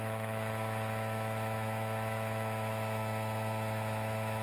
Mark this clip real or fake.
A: fake